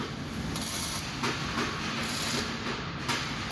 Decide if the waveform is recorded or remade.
recorded